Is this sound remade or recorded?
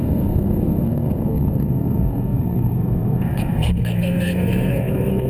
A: remade